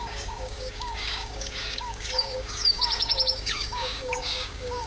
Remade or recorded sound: remade